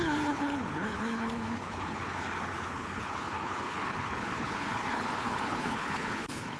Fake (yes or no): yes